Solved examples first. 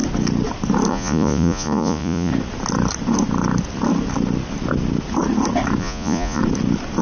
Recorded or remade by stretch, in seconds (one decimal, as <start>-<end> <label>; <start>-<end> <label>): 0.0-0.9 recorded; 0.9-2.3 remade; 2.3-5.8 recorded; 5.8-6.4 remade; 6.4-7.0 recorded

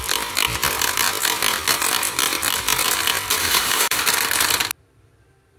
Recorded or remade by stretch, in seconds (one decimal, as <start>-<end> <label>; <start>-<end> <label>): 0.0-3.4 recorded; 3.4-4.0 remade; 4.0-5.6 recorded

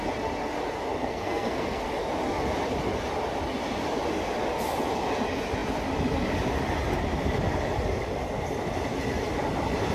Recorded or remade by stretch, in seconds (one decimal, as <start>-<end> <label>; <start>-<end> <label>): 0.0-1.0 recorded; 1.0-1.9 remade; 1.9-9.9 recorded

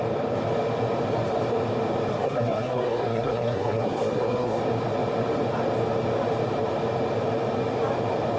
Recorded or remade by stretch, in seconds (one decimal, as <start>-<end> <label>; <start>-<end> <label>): 0.0-2.1 recorded; 2.1-4.6 remade; 4.6-8.4 recorded

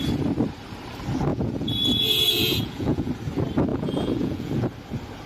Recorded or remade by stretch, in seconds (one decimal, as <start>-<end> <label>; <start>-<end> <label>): 0.0-1.3 recorded; 1.3-3.1 remade; 3.1-3.7 recorded; 3.7-4.5 remade; 4.5-5.3 recorded